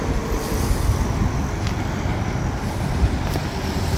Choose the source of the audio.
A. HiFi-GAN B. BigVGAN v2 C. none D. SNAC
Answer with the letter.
C